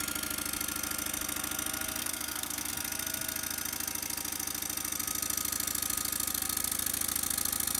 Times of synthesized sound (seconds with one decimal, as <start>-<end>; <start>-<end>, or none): 2.0-2.7

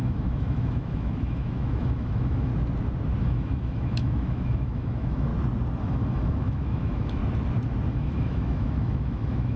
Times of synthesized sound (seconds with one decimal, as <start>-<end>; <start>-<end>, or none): 0.0-2.5; 3.2-5.3; 5.8-7.2; 7.9-9.6

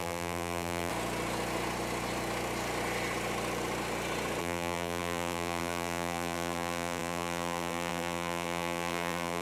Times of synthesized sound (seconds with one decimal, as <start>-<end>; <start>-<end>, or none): 0.0-0.9; 4.4-9.4

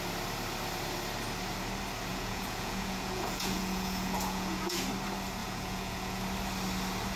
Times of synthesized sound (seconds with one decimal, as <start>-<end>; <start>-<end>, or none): 2.1-4.9; 5.4-6.2

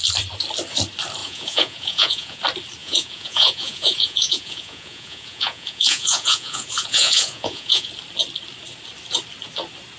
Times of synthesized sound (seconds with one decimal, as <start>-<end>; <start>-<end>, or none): 1.2-2.4; 2.8-7.9

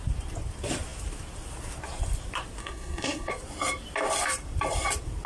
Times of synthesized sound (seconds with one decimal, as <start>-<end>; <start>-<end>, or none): 2.6-3.3

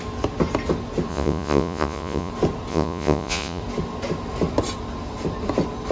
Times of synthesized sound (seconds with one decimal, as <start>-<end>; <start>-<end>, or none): 1.1-2.3; 2.7-3.6